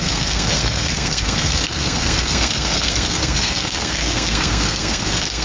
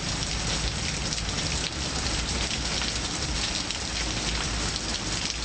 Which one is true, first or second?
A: second